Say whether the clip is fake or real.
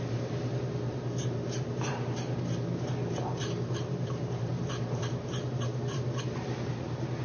fake